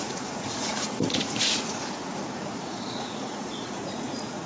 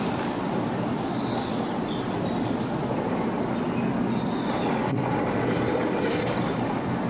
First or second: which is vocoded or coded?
first